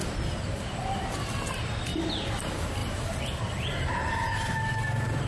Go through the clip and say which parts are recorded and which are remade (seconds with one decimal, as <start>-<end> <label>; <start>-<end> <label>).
0.0-2.8 recorded; 2.8-3.4 remade; 3.4-5.3 recorded